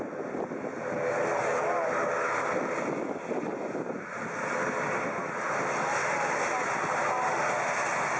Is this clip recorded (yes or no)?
yes